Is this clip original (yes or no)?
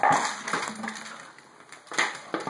yes